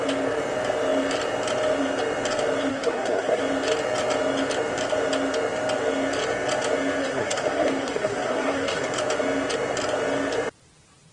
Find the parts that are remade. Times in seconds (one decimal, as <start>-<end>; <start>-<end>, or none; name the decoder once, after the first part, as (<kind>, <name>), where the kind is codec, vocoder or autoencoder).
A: 2.7-3.4 (codec, SNAC); 7.0-8.9